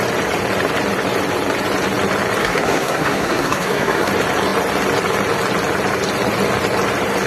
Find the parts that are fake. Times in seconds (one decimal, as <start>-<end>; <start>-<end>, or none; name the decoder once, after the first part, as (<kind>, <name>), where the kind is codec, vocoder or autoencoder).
2.4-4.1 (codec, SNAC)